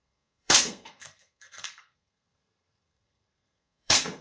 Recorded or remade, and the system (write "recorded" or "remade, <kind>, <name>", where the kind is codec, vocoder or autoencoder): remade, codec, SNAC